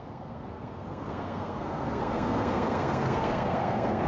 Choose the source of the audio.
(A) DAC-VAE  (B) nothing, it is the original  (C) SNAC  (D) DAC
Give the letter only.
C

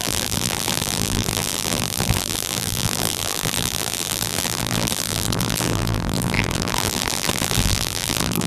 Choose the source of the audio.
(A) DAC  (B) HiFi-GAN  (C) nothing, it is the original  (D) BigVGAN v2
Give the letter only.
D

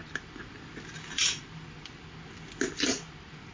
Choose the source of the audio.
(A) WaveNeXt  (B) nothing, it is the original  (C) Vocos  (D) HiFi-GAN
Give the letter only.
B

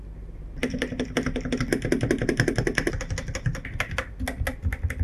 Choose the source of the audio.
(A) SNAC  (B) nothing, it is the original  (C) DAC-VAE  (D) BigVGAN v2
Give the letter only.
B